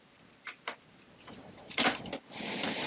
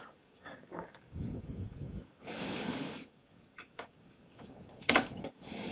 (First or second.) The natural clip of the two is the first